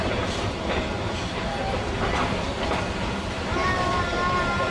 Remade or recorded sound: recorded